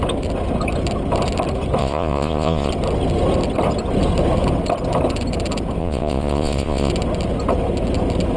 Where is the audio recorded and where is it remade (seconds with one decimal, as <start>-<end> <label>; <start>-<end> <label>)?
0.0-1.8 recorded; 1.8-2.7 remade; 2.7-5.8 recorded; 5.8-6.9 remade; 6.9-8.4 recorded